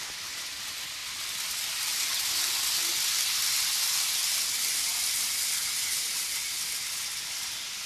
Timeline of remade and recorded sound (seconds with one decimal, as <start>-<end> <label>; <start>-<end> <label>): 0.0-7.9 recorded